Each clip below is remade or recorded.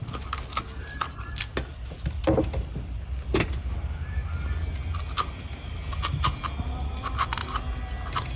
recorded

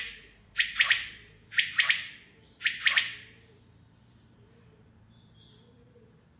remade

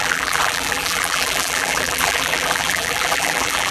remade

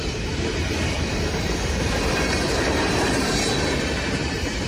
remade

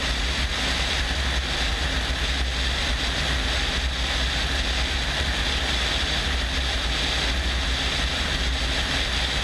recorded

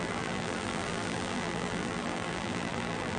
remade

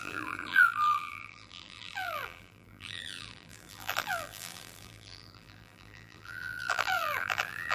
remade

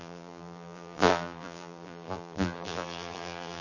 remade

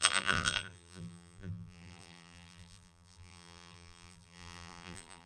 remade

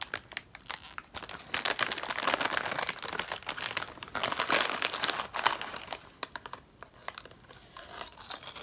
recorded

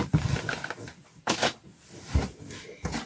remade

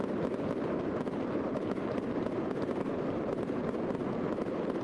recorded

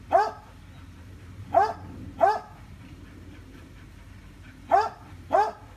recorded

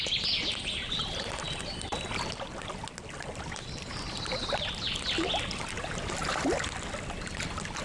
recorded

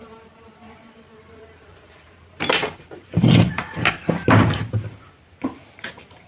remade